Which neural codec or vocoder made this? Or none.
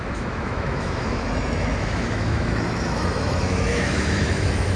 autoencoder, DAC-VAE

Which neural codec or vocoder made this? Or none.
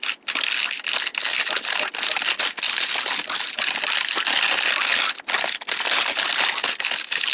none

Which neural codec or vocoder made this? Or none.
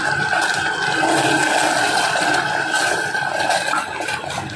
none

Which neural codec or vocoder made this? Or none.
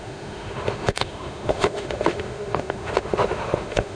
autoencoder, DAC-VAE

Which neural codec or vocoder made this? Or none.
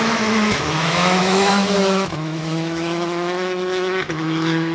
autoencoder, DAC-VAE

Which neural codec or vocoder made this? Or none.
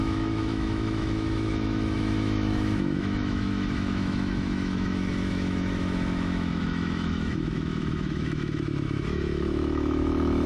autoencoder, DAC-VAE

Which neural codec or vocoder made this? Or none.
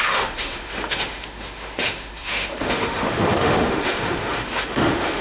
autoencoder, DAC-VAE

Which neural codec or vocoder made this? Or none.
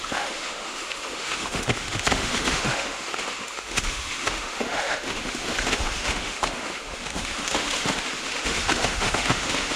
autoencoder, DAC-VAE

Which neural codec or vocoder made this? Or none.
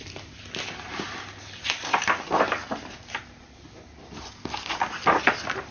none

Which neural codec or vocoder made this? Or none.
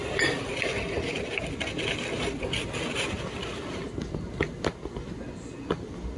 none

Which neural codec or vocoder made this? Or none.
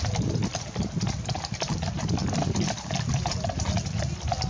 none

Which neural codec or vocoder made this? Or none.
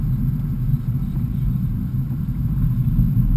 none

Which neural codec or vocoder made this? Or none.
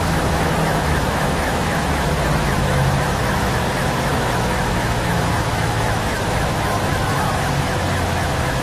autoencoder, DAC-VAE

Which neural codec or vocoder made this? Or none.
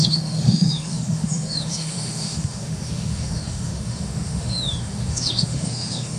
autoencoder, DAC-VAE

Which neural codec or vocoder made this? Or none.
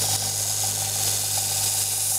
none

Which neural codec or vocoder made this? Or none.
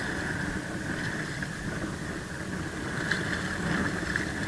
none